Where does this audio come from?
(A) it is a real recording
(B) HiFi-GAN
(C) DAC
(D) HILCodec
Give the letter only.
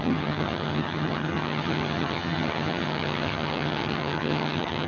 B